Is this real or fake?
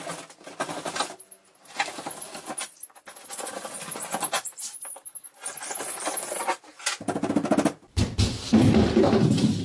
real